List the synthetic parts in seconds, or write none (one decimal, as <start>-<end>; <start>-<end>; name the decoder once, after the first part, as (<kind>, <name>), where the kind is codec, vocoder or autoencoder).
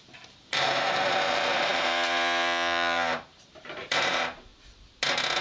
0.0-4.5 (vocoder, BigVGAN v2)